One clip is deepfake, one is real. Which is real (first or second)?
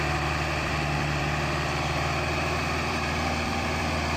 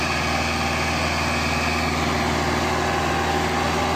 second